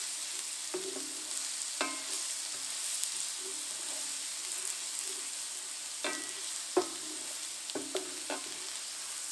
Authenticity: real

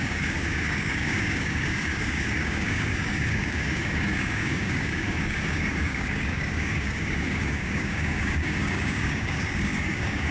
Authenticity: fake